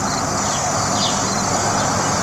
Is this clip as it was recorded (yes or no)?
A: yes